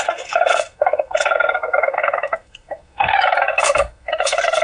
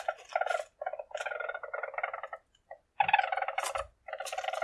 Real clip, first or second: second